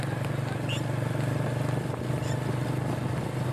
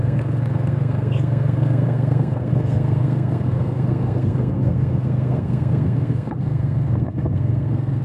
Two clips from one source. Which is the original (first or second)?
first